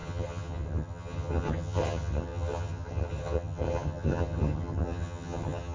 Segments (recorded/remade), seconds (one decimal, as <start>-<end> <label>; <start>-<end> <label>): 0.0-5.7 remade